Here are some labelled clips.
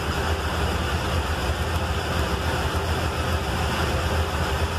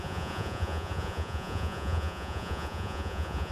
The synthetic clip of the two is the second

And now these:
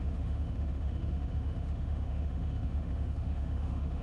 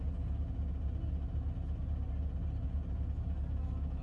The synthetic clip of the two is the first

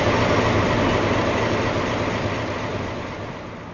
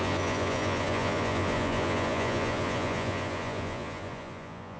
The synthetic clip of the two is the second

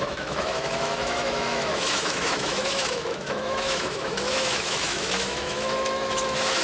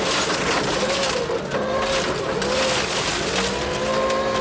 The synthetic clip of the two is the first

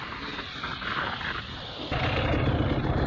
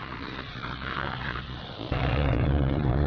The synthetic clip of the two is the second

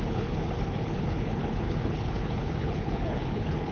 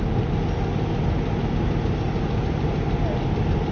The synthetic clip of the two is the first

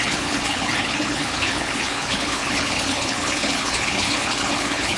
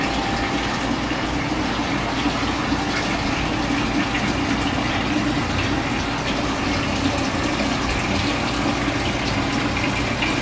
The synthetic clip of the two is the first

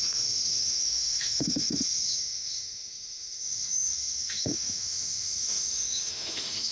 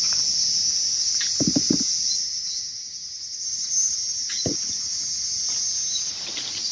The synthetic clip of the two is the first